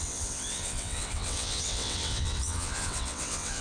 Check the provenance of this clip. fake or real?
fake